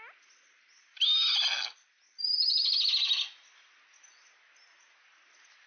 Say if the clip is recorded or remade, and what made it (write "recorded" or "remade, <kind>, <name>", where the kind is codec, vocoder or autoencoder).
recorded